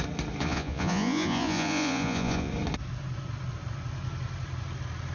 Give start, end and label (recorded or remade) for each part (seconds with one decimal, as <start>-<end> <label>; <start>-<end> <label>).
0.0-0.4 recorded; 0.4-2.5 remade; 2.5-5.1 recorded

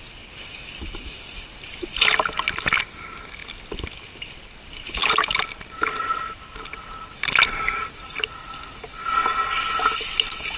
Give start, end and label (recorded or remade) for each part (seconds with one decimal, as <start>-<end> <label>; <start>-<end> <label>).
0.0-10.6 recorded

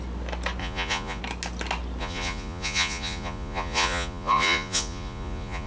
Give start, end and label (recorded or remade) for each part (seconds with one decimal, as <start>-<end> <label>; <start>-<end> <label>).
0.0-0.6 recorded; 0.6-1.2 remade; 1.2-2.0 recorded; 2.0-5.7 remade

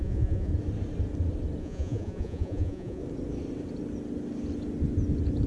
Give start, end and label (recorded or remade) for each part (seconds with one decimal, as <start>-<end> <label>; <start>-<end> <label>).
0.0-0.5 remade; 0.5-1.6 recorded; 1.6-3.0 remade; 3.0-5.5 recorded

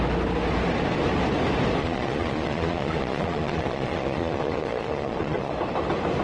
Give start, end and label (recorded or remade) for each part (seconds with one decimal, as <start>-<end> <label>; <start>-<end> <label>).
0.0-1.8 recorded; 1.8-5.5 remade; 5.5-6.2 recorded

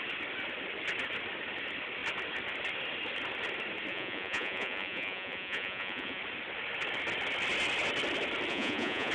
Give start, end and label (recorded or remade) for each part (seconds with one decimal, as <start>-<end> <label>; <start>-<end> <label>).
0.0-3.9 recorded; 3.9-6.2 remade; 6.2-8.5 recorded; 8.5-9.1 remade